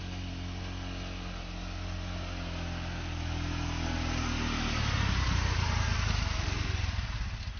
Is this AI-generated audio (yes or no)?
no